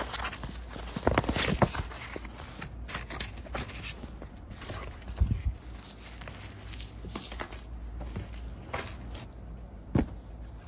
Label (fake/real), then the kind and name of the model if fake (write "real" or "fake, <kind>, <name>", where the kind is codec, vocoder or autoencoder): real